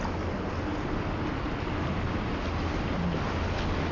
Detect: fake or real real